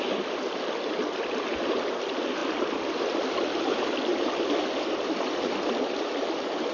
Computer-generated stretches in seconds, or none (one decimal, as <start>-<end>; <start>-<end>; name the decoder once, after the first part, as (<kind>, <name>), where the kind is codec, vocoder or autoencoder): none